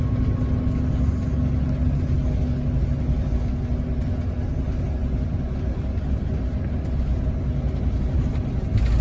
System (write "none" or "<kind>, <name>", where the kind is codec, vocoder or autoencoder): none